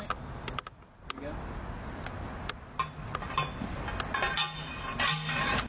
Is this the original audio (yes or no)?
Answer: yes